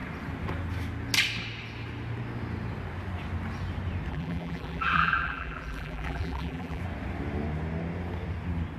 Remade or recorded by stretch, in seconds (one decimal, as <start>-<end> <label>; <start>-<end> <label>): 0.0-4.1 recorded; 4.1-6.8 remade; 6.8-8.8 recorded